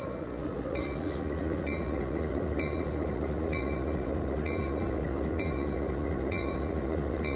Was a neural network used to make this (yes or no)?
yes